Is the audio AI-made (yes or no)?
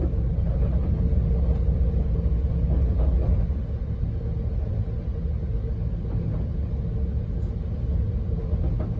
no